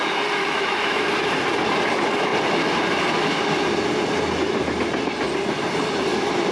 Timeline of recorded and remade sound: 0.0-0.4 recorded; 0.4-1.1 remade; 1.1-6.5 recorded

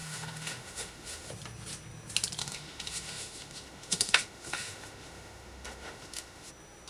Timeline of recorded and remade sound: 0.0-1.3 remade; 1.3-2.4 recorded; 2.4-6.5 remade; 6.5-6.9 recorded

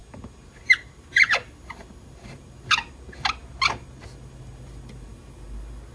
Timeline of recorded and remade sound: 0.0-5.9 recorded

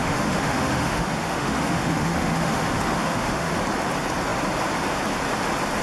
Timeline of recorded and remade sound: 0.0-3.5 remade; 3.5-5.8 recorded